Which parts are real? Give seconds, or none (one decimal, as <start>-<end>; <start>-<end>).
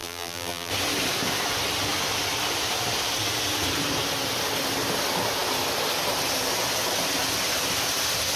0.7-8.4